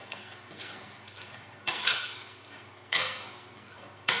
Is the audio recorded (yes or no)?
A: no